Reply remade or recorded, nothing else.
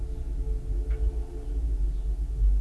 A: recorded